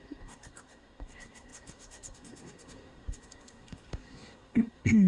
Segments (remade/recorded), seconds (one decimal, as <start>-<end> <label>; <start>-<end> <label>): 0.0-5.1 remade